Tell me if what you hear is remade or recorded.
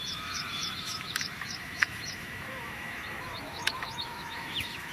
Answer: remade